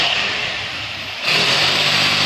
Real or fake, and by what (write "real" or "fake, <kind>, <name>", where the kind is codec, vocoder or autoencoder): fake, vocoder, BigVGAN v2